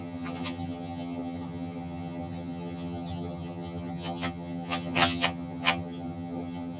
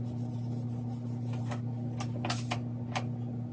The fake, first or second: first